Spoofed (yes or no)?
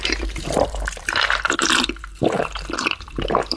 yes